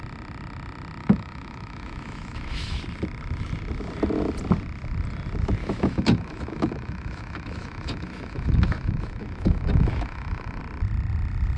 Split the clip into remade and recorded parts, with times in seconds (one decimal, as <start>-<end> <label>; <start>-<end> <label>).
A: 0.0-1.0 recorded; 1.0-2.8 remade; 2.8-5.6 recorded; 5.6-10.6 remade; 10.6-11.6 recorded